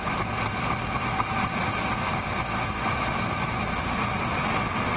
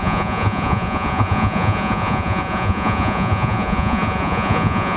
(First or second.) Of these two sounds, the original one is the first